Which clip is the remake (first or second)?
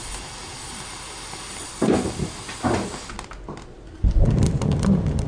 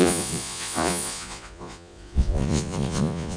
second